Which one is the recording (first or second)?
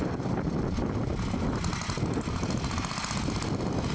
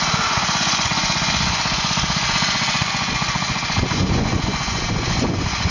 first